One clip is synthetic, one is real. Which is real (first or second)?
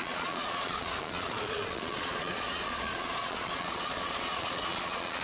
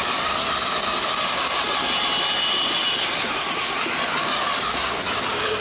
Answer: second